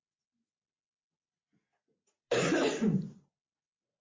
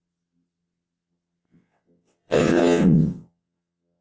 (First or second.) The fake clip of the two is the second